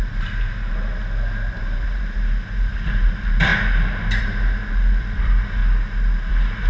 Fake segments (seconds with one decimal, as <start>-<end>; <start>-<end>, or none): 0.0-1.0; 1.5-3.5; 4.2-5.6; 6.3-6.7